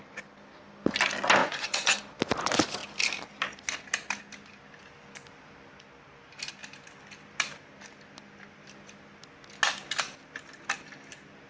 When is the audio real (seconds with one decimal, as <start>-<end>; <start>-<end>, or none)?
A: 0.0-1.4; 2.0-11.5